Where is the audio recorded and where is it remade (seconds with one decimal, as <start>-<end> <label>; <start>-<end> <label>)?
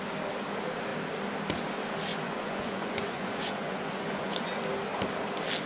0.0-2.1 recorded; 2.1-4.5 remade; 4.5-5.7 recorded